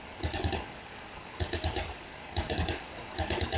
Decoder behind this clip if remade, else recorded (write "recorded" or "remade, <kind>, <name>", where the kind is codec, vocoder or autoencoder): remade, codec, DAC